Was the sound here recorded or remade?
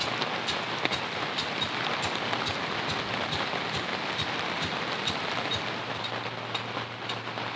recorded